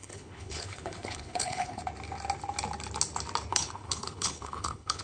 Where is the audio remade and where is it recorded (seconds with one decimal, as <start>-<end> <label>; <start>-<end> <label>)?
0.0-1.8 remade; 1.8-3.5 recorded; 3.5-5.0 remade